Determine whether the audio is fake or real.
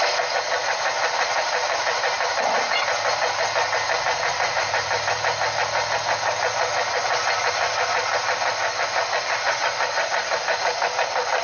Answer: real